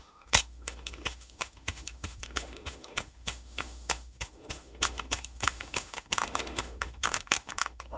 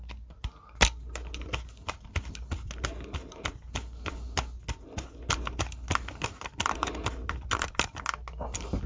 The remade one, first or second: first